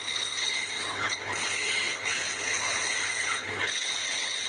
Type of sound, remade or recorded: remade